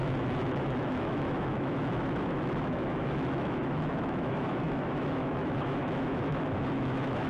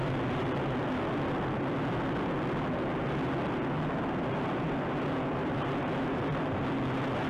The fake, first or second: first